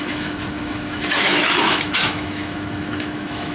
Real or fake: fake